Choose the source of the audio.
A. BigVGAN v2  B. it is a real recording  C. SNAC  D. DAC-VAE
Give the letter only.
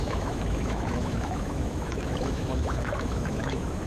D